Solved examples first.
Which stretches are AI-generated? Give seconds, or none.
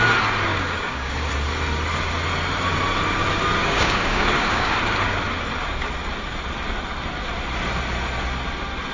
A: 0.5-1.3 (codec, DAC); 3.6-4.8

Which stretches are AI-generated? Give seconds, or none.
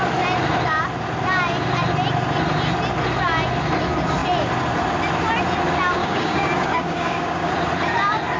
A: 6.0-7.5 (codec, DAC)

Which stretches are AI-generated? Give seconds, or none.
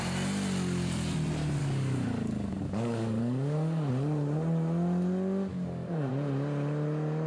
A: 1.6-3.9 (codec, DAC); 5.5-6.1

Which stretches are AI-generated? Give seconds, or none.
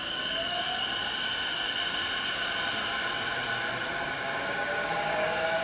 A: 0.0-0.7 (codec, DAC); 4.1-5.6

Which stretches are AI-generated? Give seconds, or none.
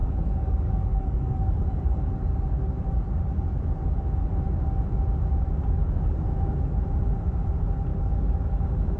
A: 0.0-2.0 (codec, DAC); 7.9-9.0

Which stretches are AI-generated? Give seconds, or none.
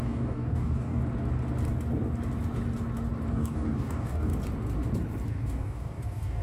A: 0.0-1.0 (codec, DAC); 3.3-4.3; 5.3-6.4